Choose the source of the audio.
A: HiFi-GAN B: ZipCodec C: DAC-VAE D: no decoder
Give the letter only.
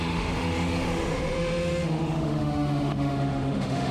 C